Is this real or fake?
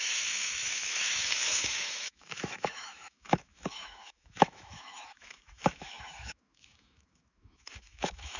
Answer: fake